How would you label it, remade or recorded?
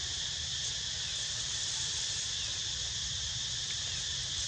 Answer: recorded